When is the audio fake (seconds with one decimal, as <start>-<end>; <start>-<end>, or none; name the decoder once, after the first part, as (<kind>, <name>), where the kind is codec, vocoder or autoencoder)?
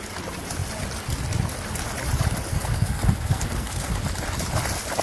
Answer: 2.5-4.0 (codec, SNAC)